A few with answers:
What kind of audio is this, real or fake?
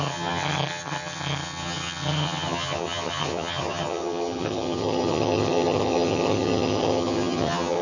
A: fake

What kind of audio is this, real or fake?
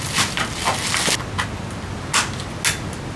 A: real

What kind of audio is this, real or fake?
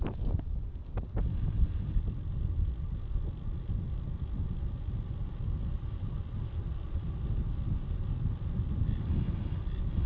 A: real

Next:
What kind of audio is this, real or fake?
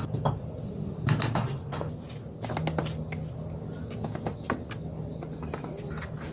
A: real